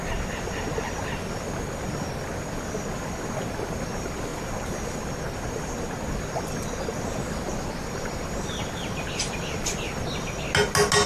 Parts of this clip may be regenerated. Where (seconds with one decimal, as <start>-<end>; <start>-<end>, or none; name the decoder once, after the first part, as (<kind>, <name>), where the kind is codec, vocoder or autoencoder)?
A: none